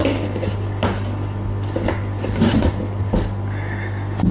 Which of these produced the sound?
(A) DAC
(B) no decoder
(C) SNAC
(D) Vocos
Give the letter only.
B